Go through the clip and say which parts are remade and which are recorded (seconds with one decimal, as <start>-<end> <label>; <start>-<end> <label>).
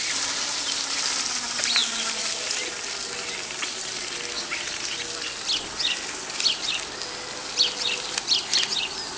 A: 0.0-9.2 recorded